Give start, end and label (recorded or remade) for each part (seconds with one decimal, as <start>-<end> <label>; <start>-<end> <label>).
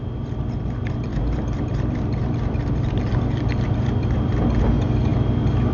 0.0-1.1 recorded; 1.1-4.5 remade; 4.5-5.7 recorded